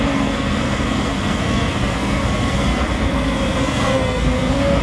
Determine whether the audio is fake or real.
fake